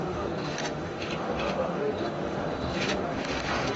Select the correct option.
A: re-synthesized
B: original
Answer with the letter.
A